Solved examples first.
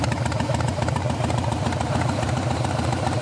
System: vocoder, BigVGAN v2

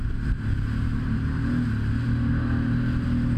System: none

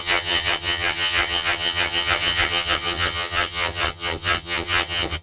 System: vocoder, HiFi-GAN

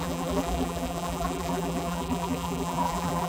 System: vocoder, BigVGAN v2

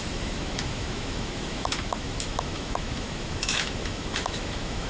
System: autoencoder, DAC-VAE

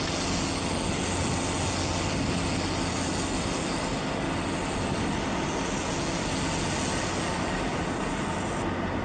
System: none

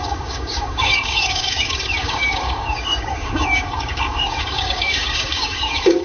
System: codec, DAC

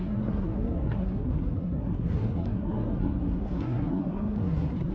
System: codec, SNAC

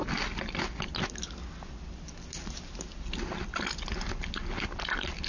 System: none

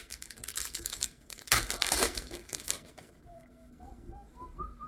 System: codec, SNAC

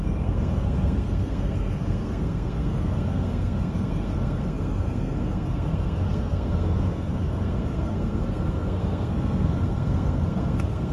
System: codec, SNAC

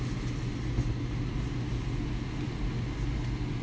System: none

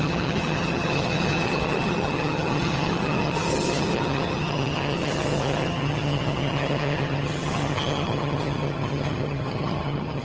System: vocoder, HiFi-GAN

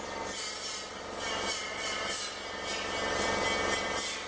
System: none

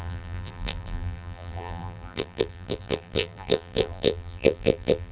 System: vocoder, BigVGAN v2